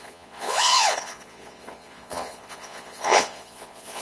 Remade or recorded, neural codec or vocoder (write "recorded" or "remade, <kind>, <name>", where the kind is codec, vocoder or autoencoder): remade, vocoder, Vocos